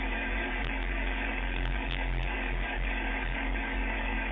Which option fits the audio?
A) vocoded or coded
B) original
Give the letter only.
A